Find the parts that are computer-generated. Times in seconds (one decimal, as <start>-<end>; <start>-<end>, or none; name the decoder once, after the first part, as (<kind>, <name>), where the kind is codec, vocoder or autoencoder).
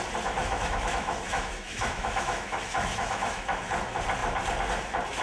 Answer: 0.4-3.5 (autoencoder, DAC-VAE)